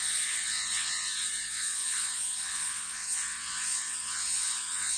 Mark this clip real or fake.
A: fake